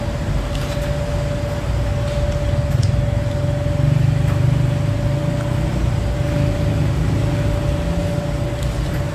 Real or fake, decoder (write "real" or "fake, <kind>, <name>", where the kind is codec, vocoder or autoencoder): real